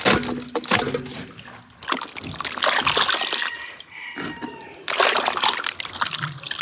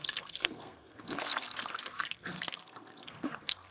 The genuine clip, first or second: first